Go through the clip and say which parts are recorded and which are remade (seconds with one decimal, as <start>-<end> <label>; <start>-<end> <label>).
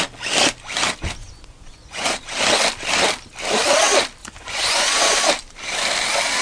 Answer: 0.0-1.2 recorded; 1.2-2.2 remade; 2.2-4.2 recorded; 4.2-5.2 remade; 5.2-6.4 recorded